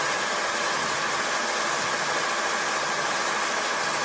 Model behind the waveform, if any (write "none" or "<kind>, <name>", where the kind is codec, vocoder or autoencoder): none